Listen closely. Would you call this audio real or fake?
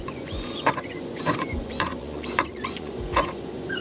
fake